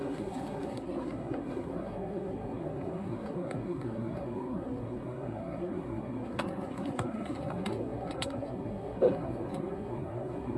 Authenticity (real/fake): fake